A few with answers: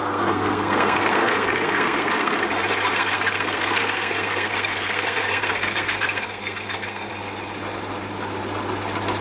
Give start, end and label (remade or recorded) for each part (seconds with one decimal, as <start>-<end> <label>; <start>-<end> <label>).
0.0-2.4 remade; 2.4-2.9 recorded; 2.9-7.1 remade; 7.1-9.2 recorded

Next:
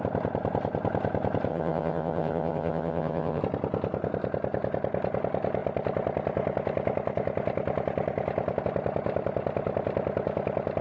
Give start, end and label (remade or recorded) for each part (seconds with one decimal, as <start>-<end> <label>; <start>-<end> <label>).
0.0-1.5 recorded; 1.5-3.4 remade; 3.4-10.8 recorded

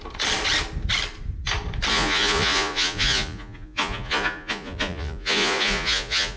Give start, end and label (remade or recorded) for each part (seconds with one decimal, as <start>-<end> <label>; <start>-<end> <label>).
0.0-1.9 recorded; 1.9-6.4 remade

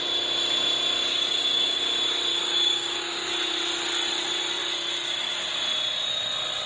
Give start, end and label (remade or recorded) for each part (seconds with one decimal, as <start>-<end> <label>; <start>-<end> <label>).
0.0-1.1 recorded; 1.1-1.8 remade; 1.8-2.3 recorded; 2.3-3.3 remade; 3.3-6.7 recorded

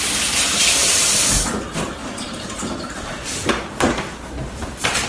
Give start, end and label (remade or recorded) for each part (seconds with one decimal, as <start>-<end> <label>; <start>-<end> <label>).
0.0-0.8 recorded; 0.8-1.5 remade; 1.5-2.0 recorded; 2.0-3.5 remade; 3.5-5.1 recorded